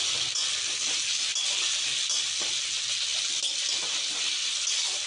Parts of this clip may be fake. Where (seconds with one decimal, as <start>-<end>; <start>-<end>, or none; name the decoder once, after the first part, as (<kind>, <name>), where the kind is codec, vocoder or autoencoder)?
none